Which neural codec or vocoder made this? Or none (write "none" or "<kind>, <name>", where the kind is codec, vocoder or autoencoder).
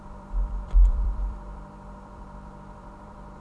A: vocoder, BigVGAN v2